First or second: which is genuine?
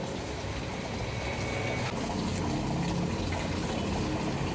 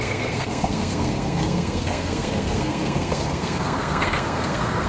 first